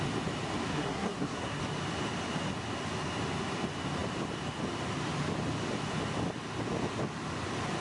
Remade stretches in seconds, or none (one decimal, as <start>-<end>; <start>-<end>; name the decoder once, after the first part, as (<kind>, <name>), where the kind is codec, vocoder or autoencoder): 0.7-1.6 (codec, SNAC)